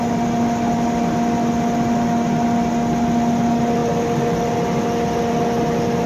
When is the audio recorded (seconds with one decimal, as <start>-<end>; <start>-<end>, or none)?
0.0-6.1